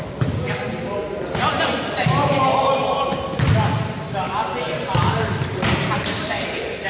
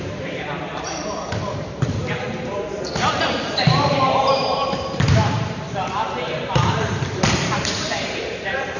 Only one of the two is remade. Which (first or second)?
second